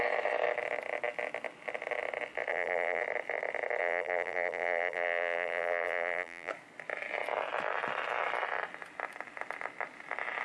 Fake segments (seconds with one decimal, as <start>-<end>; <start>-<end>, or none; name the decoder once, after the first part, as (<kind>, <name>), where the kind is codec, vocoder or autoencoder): 2.5-3.0 (vocoder, BigVGAN v2); 3.8-6.5